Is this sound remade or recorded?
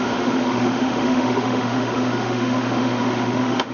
remade